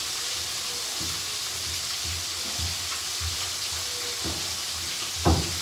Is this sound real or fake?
real